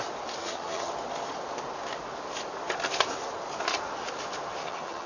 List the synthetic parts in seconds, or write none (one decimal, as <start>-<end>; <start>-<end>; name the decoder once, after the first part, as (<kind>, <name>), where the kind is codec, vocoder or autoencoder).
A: 0.4-0.9 (vocoder, HiFi-GAN); 4.6-5.1